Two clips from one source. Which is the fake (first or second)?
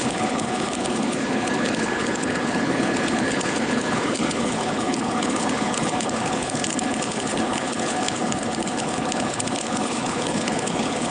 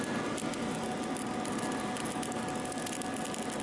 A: first